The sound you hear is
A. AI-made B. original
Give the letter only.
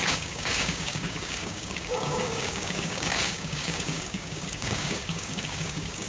A